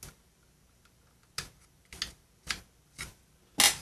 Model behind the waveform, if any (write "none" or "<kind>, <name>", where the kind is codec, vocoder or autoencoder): none